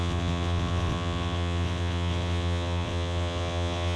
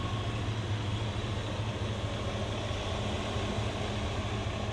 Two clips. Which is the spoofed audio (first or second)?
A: first